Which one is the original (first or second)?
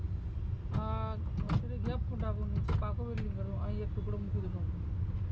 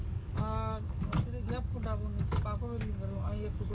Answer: first